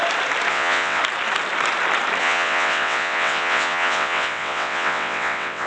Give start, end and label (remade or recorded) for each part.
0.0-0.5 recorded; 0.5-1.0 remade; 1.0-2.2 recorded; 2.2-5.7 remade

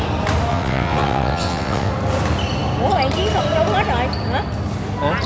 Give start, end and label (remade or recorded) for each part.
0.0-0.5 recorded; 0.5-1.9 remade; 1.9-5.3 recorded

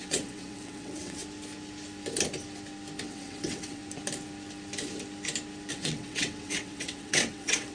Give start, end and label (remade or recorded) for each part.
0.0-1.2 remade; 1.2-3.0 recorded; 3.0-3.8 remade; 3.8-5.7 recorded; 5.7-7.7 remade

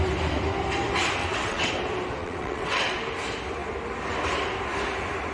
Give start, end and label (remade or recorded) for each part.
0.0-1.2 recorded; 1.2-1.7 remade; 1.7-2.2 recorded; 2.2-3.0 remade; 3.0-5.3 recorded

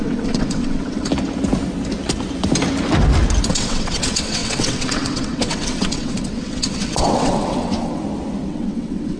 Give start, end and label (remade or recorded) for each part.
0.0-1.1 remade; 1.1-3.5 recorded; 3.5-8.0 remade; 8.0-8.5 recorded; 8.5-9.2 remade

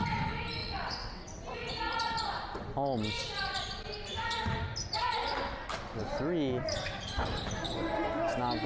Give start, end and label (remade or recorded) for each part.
0.0-0.6 recorded; 0.6-1.7 remade; 1.7-8.7 recorded

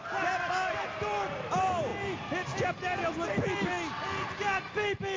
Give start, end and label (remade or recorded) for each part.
0.0-5.2 recorded